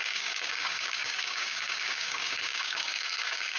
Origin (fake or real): fake